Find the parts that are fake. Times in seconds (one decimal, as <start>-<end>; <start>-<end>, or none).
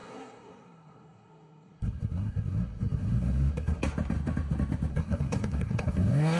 0.0-3.8; 4.9-6.4